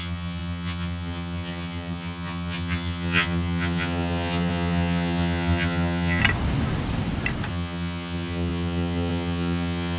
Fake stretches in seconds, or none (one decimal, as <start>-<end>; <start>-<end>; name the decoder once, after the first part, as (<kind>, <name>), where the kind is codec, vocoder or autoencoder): 0.0-6.2 (vocoder, HiFi-GAN); 7.5-10.0

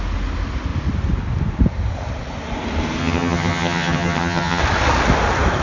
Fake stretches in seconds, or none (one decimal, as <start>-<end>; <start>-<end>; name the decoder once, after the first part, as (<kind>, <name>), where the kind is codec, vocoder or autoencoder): 3.0-4.6 (vocoder, HiFi-GAN)

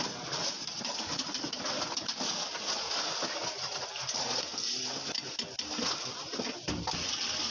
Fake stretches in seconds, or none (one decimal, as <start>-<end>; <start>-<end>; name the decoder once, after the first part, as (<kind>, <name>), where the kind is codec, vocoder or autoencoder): none

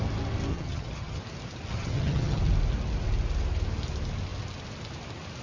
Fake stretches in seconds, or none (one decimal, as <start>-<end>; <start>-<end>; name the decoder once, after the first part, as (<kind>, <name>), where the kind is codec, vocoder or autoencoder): 0.5-1.2 (vocoder, HiFi-GAN); 1.7-2.4

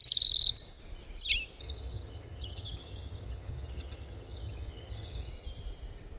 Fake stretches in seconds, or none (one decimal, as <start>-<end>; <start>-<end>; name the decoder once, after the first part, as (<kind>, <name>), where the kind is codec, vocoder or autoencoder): 1.6-5.3 (vocoder, HiFi-GAN)